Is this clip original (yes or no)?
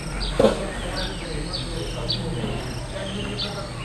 yes